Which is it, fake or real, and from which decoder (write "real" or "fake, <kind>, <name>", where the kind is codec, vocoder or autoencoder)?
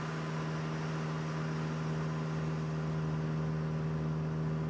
real